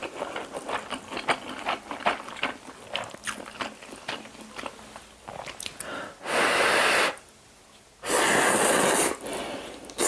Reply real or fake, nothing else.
real